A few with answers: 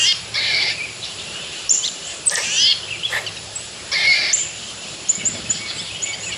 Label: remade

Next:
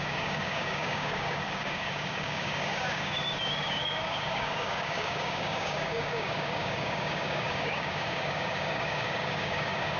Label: remade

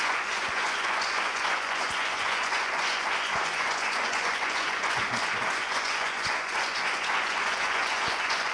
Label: remade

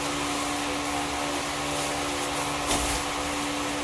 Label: recorded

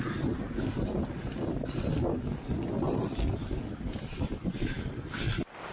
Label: recorded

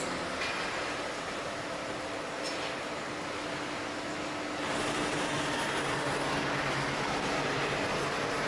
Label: recorded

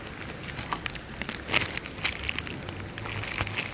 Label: recorded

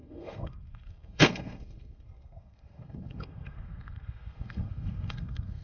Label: remade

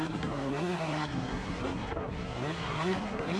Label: remade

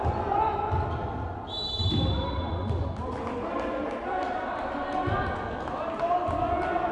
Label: recorded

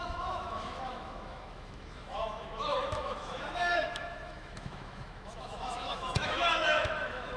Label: remade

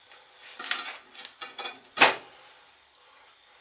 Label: recorded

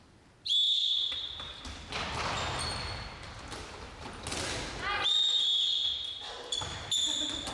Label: recorded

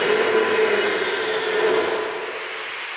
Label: recorded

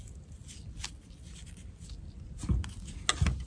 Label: recorded